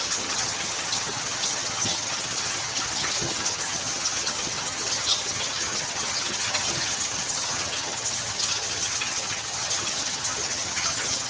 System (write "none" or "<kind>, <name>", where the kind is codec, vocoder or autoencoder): vocoder, HiFi-GAN